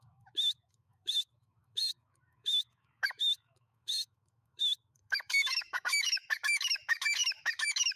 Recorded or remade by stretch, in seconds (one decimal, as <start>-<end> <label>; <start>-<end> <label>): 0.0-8.0 remade